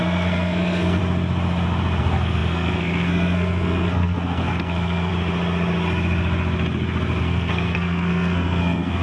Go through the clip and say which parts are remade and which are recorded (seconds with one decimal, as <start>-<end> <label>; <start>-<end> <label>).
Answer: 0.0-1.0 remade; 1.0-2.0 recorded; 2.0-5.1 remade; 5.1-7.2 recorded; 7.2-9.0 remade